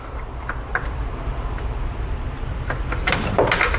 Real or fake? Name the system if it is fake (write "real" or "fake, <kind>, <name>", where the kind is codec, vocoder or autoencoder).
real